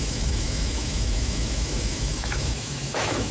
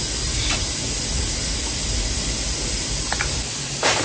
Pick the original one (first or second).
second